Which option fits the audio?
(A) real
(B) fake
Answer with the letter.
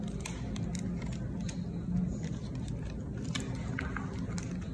A